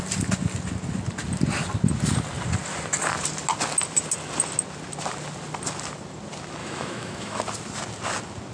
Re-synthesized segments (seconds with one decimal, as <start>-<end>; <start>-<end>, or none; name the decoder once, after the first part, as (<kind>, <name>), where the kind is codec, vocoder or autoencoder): 6.6-7.4 (autoencoder, DAC-VAE)